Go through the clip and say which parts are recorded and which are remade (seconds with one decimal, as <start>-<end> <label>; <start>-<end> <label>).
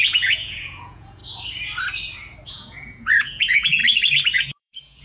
0.0-1.2 remade; 1.2-2.5 recorded; 2.5-3.8 remade; 3.8-4.4 recorded; 4.4-5.0 remade